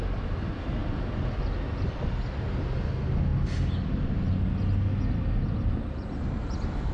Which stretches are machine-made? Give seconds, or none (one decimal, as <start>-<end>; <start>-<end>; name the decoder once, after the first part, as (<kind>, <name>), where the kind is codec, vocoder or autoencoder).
none